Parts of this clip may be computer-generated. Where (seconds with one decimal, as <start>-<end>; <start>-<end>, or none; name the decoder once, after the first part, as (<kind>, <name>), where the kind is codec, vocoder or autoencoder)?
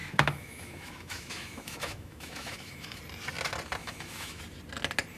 0.0-3.0 (autoencoder, DAC-VAE); 3.8-4.4